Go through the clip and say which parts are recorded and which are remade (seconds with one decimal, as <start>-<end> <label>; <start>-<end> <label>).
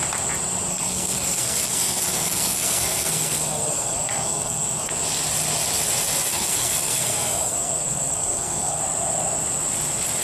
0.0-0.7 recorded; 0.7-4.9 remade; 4.9-6.3 recorded; 6.3-8.8 remade; 8.8-10.2 recorded